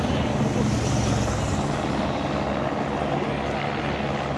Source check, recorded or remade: recorded